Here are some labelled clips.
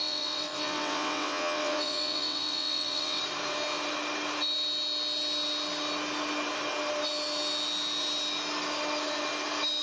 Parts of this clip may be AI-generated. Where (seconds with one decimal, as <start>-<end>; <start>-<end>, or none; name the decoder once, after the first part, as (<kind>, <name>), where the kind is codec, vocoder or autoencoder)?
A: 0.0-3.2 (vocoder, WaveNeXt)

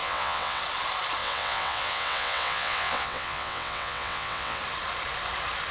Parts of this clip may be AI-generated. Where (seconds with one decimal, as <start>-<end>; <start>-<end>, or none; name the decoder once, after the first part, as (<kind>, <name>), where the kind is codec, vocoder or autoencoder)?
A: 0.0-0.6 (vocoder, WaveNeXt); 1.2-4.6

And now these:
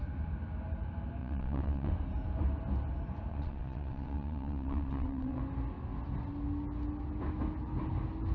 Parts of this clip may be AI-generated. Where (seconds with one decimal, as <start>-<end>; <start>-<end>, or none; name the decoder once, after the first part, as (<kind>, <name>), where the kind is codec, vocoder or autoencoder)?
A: 1.2-1.9 (vocoder, WaveNeXt); 3.3-5.4

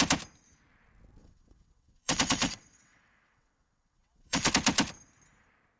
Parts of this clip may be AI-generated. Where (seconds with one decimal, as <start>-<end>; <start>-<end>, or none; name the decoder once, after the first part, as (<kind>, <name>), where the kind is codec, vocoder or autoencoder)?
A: 1.2-4.5 (vocoder, WaveNeXt)

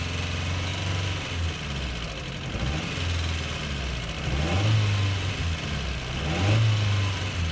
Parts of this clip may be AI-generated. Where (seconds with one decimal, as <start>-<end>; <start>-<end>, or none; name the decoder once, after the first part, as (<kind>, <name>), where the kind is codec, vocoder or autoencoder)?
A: none

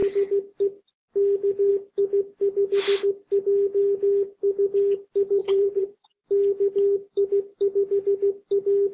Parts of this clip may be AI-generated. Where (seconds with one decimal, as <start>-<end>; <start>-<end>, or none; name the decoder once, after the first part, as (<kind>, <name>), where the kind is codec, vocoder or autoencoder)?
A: 5.4-6.2 (vocoder, WaveNeXt)